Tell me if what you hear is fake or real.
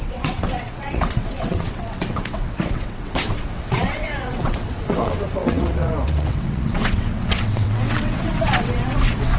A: fake